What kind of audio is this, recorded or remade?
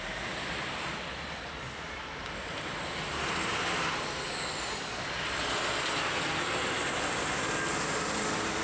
recorded